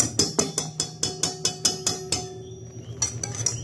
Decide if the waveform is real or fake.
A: real